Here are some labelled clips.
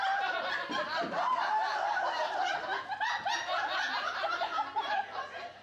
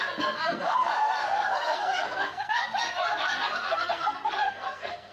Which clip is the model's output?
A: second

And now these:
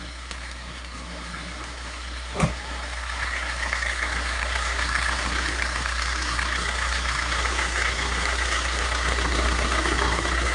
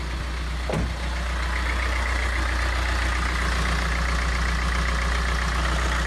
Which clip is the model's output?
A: first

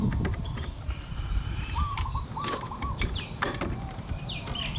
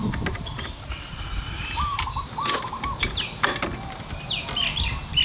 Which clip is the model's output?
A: first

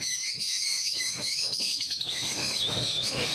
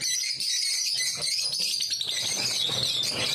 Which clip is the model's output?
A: first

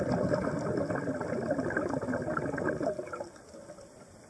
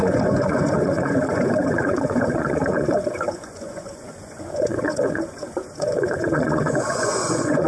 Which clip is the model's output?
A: second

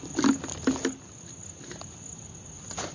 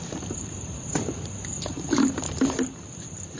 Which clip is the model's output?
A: second